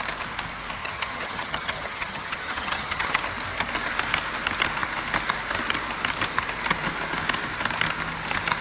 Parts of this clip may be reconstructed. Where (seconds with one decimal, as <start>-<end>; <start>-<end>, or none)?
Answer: 0.8-3.2